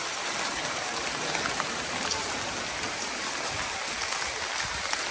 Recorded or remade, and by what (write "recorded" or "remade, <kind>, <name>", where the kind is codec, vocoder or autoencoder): recorded